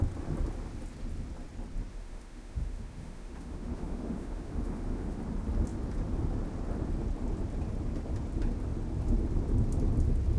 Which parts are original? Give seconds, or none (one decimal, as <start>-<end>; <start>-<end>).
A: 0.0-1.9; 5.2-10.4

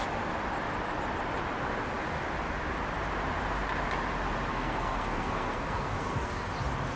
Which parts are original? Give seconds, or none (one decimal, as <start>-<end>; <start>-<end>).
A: 0.0-4.5; 6.5-7.0